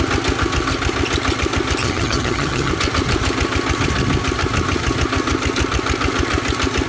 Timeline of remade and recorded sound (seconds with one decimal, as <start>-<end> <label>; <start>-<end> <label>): 0.0-1.8 recorded; 1.8-2.7 remade; 2.7-6.9 recorded